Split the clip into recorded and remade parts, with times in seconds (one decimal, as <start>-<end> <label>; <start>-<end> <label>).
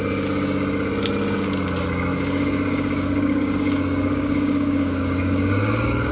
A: 0.0-2.1 recorded; 2.1-6.1 remade